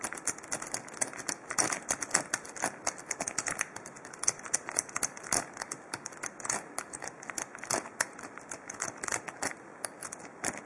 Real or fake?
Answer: real